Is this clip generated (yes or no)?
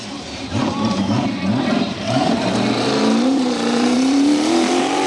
yes